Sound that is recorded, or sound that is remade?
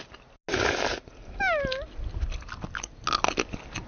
recorded